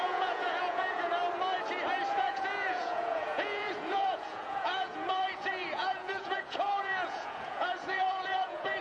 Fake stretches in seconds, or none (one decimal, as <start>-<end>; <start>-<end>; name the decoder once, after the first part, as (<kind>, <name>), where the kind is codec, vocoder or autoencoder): 0.0-1.2 (vocoder, Vocos); 2.1-8.8